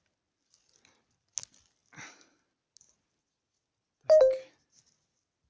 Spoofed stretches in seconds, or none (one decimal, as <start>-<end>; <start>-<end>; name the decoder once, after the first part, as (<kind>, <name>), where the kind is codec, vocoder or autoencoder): none